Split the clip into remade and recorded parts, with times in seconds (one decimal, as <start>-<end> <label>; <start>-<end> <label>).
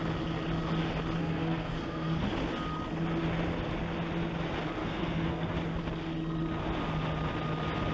0.0-1.2 recorded; 1.2-2.2 remade; 2.2-4.8 recorded; 4.8-5.5 remade; 5.5-7.9 recorded